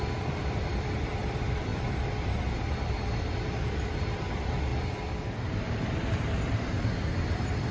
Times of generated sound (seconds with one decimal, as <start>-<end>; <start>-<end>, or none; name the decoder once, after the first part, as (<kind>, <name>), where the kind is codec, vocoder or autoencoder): 0.0-4.7 (vocoder, BigVGAN v2); 5.6-7.7